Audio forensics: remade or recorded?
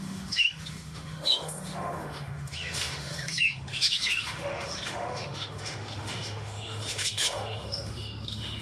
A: remade